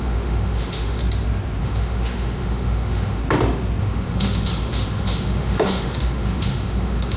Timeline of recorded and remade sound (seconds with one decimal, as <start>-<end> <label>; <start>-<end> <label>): 0.0-1.0 remade; 1.0-1.6 recorded; 1.6-3.2 remade; 3.2-3.8 recorded; 3.8-7.2 remade